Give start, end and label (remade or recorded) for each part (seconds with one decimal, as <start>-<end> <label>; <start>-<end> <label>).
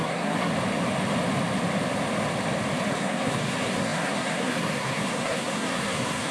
0.0-0.5 remade; 0.5-2.9 recorded; 2.9-6.3 remade